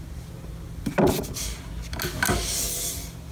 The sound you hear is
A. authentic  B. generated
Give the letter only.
A